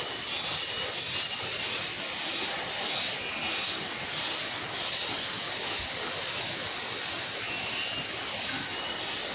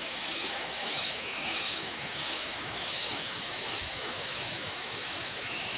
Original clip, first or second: first